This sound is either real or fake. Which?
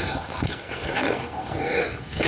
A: fake